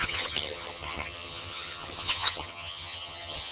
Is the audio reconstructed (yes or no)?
yes